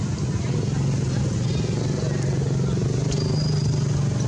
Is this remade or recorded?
recorded